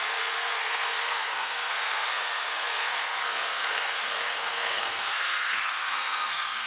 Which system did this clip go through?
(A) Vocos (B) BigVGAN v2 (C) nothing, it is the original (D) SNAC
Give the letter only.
D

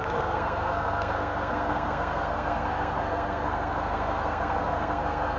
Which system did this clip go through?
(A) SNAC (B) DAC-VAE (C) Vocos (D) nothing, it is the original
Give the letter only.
A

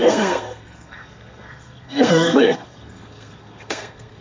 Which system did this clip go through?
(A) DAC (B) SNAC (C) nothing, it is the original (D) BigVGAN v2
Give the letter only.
B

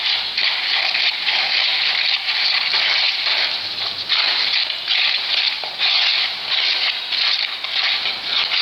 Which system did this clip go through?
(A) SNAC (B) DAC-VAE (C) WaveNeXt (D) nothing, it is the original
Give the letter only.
D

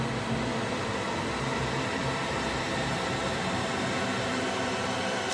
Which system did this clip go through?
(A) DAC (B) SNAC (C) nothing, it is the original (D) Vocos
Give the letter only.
C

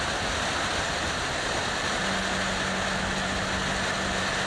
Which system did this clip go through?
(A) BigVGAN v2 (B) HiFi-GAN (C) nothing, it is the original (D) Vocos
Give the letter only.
C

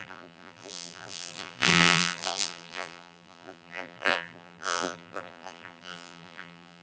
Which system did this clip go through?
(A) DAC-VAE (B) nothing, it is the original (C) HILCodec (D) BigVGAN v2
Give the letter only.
D